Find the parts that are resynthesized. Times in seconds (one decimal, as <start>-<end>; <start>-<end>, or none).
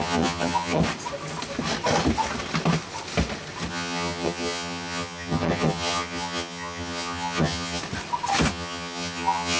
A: 0.0-0.8; 3.7-7.8; 8.5-9.6